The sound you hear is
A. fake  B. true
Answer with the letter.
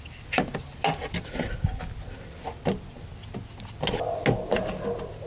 B